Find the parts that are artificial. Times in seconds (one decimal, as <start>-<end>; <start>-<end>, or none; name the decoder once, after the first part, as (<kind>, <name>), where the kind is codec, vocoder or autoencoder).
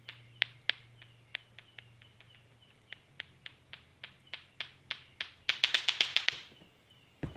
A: none